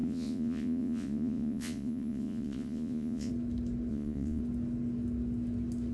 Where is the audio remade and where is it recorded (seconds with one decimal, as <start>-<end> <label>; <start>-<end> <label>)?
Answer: 0.0-3.3 remade; 3.3-3.9 recorded; 3.9-4.4 remade; 4.4-5.9 recorded